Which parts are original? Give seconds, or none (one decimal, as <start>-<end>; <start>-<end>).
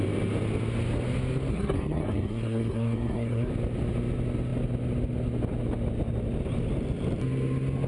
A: 0.0-1.5; 3.5-7.9